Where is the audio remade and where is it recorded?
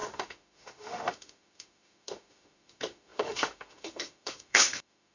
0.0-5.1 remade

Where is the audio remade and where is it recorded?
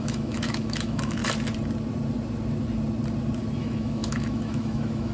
0.0-1.2 remade; 1.2-3.6 recorded; 3.6-5.1 remade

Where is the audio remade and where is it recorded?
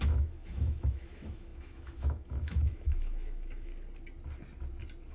0.0-3.7 remade; 3.7-5.1 recorded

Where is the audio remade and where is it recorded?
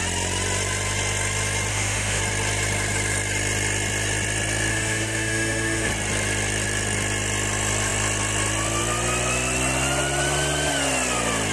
0.0-1.7 recorded; 1.7-2.2 remade; 2.2-4.7 recorded; 4.7-5.9 remade; 5.9-11.5 recorded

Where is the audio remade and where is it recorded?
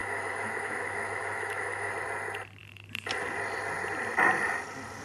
0.0-1.9 remade; 1.9-5.0 recorded